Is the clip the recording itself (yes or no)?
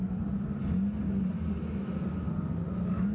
yes